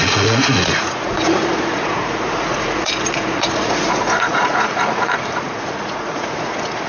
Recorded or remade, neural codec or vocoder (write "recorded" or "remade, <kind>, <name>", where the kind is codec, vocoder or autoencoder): remade, vocoder, Vocos